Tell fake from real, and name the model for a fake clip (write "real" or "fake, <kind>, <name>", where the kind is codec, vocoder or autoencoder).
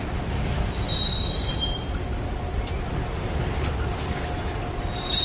real